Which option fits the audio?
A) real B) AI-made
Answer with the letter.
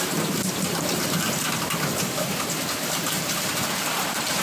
B